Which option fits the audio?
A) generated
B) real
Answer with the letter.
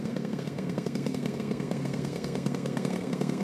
A